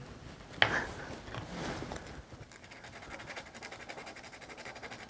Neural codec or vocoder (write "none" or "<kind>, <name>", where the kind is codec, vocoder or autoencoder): none